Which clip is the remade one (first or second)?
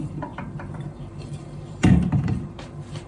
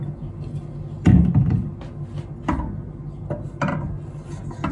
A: first